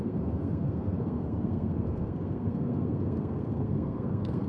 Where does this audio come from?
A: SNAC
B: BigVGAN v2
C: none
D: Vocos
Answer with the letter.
A